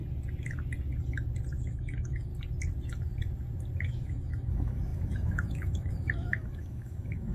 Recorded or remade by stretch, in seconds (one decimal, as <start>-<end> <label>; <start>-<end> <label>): 0.0-1.6 recorded; 1.6-2.3 remade; 2.3-3.8 recorded; 3.8-7.3 remade